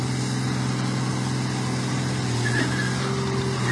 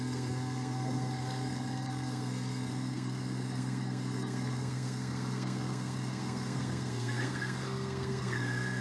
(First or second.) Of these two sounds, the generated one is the second